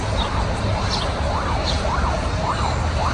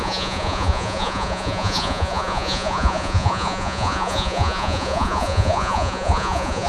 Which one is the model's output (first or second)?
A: second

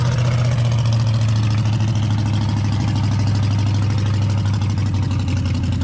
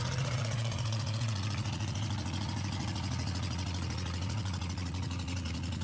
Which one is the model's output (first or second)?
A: second